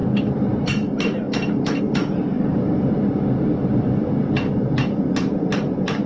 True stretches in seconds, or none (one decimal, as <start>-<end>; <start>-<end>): none